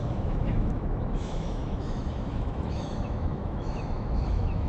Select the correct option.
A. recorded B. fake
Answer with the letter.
B